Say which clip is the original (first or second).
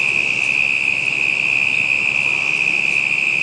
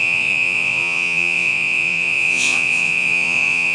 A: first